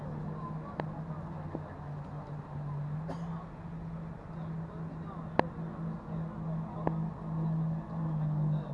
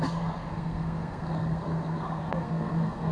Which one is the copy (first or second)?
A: second